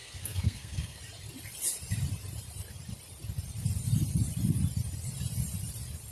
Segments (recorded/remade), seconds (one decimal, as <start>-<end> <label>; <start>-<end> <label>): 0.0-1.0 remade; 1.0-6.1 recorded

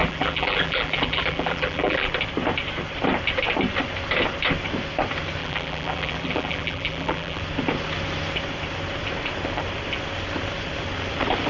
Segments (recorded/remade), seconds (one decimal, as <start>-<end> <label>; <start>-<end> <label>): 0.0-2.1 remade; 2.1-5.4 recorded; 5.4-7.4 remade; 7.4-11.5 recorded